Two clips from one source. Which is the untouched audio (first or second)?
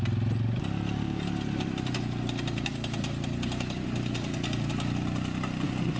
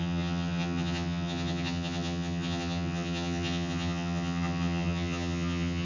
first